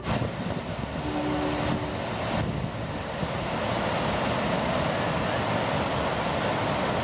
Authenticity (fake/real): real